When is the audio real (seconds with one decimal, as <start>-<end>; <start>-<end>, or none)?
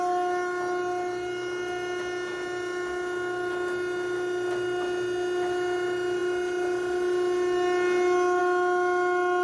0.0-9.4